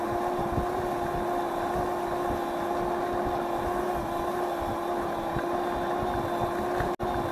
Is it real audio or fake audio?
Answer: real